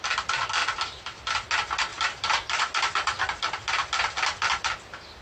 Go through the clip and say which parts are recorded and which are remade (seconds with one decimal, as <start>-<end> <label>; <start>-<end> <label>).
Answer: 0.0-1.9 recorded; 1.9-3.2 remade; 3.2-5.2 recorded